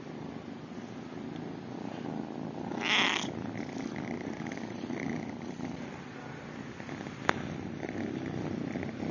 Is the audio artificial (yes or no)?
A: no